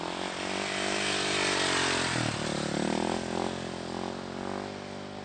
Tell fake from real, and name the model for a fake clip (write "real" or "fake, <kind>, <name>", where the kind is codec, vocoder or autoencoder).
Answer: real